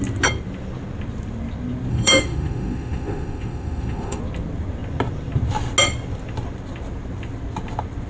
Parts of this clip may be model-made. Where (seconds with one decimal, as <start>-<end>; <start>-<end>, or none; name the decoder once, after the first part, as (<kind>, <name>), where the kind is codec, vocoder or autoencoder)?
1.9-4.2 (autoencoder, DAC-VAE)